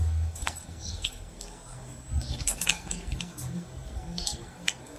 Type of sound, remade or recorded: remade